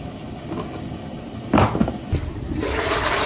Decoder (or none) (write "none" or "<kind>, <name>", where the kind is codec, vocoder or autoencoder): none